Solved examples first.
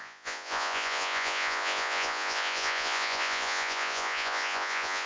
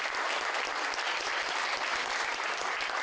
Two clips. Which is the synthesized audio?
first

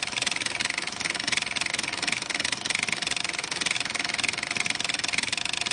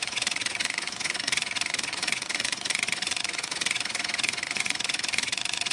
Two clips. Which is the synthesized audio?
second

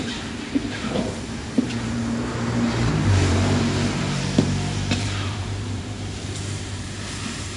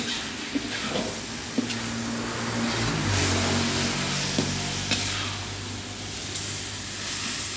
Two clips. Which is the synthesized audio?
first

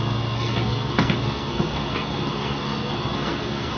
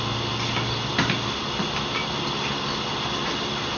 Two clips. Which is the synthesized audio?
first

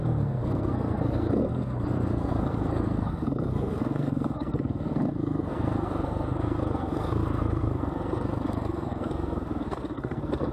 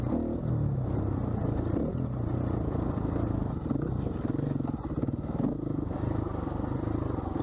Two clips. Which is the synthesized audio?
first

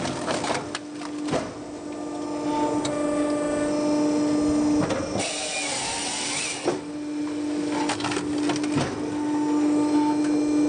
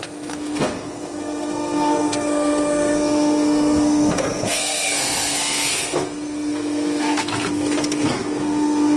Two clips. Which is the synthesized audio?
second